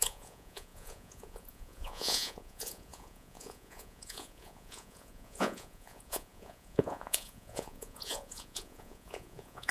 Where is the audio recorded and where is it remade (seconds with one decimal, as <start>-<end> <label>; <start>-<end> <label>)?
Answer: 0.0-9.7 remade